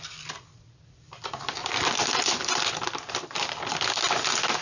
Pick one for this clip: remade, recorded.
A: recorded